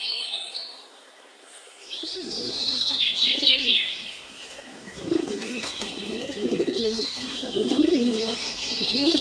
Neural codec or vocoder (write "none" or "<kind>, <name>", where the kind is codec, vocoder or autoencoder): codec, SNAC